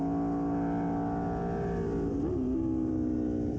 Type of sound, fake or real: real